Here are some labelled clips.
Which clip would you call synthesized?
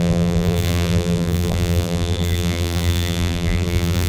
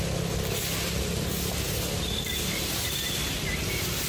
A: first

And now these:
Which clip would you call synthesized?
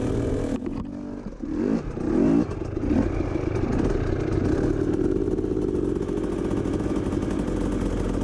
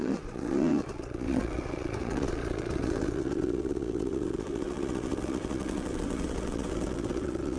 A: second